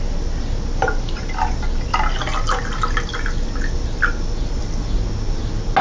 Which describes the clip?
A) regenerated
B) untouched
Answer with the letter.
B